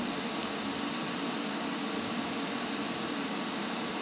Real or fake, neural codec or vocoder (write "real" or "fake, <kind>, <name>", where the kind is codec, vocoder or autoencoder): real